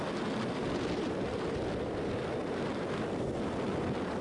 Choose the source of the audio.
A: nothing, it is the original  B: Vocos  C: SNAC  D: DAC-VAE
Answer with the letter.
A